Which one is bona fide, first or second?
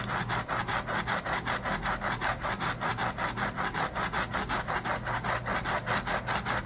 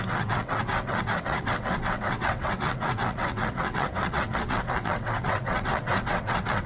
first